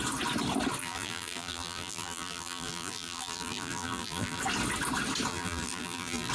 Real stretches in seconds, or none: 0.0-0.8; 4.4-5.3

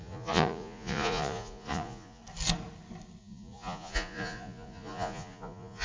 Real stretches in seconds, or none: 2.2-3.2